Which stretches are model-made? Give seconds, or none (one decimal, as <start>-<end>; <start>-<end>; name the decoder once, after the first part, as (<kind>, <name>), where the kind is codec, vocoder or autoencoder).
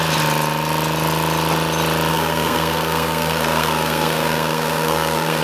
2.1-5.4 (codec, SNAC)